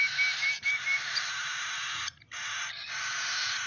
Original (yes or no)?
yes